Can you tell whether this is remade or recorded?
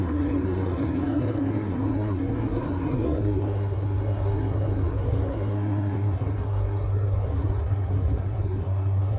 remade